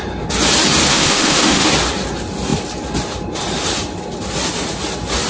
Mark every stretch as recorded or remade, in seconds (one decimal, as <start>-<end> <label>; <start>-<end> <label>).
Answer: 0.0-0.9 recorded; 0.9-1.7 remade; 1.7-5.3 recorded